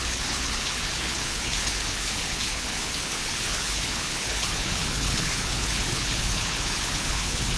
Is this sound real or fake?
fake